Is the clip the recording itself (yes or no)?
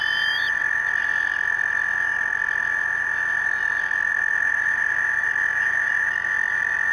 yes